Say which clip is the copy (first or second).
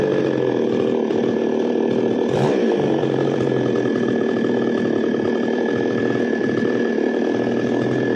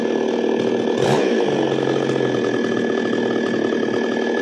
first